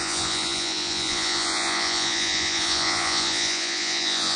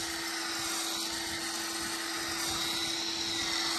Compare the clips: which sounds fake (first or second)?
first